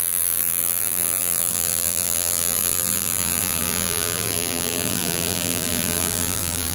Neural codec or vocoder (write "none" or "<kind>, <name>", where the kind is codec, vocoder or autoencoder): vocoder, BigVGAN v2